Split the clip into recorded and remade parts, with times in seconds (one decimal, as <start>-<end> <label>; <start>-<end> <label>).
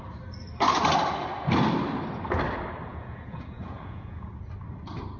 0.0-2.9 recorded; 2.9-4.3 remade; 4.3-5.2 recorded